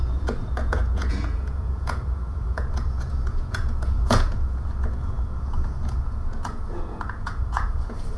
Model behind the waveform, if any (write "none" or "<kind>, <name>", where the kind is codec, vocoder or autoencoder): vocoder, Vocos